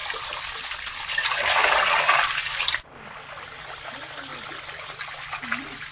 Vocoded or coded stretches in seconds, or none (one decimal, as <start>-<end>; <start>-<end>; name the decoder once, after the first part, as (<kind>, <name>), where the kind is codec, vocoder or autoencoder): 0.0-1.9 (vocoder, BigVGAN v2)